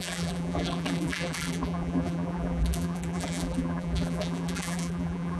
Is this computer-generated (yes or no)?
yes